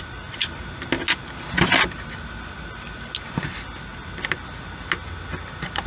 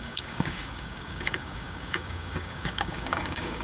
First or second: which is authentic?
first